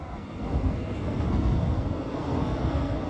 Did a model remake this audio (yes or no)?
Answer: yes